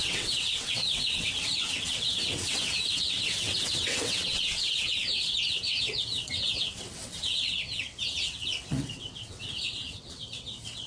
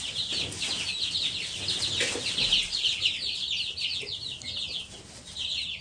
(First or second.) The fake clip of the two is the first